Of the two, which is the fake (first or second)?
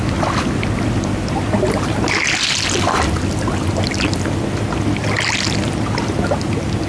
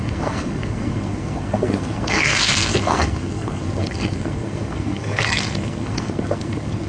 second